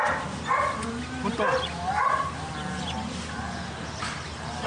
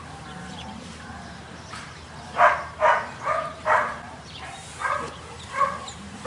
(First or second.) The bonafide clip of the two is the first